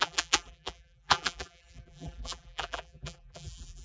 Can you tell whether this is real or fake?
fake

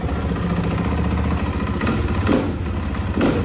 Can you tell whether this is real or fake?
real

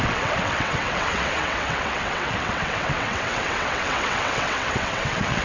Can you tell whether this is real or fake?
fake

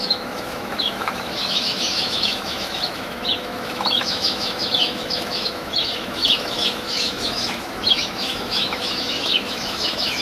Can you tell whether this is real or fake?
fake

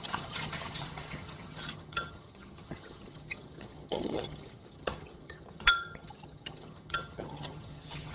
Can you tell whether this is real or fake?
fake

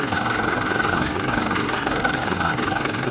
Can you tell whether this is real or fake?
fake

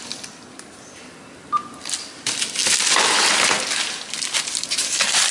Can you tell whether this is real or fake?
real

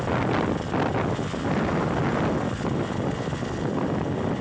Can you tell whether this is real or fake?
real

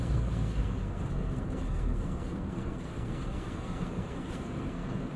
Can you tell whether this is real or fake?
fake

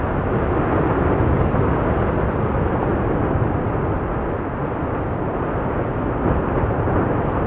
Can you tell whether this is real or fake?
real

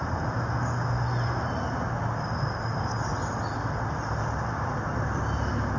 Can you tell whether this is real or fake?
real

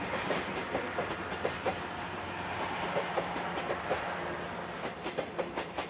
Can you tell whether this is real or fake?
real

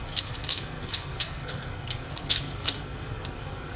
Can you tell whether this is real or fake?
fake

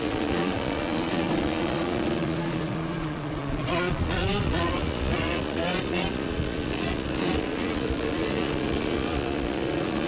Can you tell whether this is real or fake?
fake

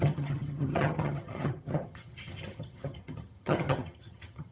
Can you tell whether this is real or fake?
fake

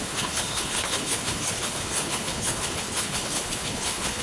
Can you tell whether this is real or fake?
fake